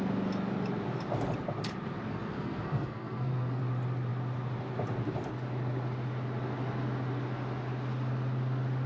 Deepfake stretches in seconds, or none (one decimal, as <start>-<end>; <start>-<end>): 2.1-3.6